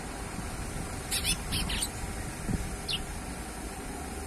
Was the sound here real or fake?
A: real